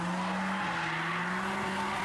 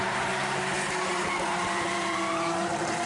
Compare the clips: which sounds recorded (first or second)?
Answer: first